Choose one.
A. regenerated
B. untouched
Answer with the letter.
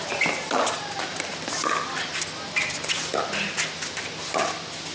B